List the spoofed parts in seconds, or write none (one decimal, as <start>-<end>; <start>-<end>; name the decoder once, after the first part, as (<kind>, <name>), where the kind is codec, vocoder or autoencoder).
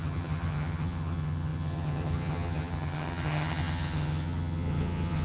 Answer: 0.0-5.2 (vocoder, HiFi-GAN)